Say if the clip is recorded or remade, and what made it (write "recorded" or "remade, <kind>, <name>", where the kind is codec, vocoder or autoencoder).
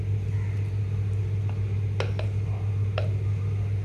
recorded